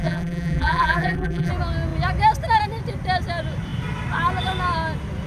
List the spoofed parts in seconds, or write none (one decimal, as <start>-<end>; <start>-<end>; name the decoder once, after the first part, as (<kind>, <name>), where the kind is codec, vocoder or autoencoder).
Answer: 0.0-1.5 (vocoder, BigVGAN v2)